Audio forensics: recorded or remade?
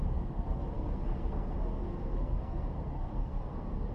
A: remade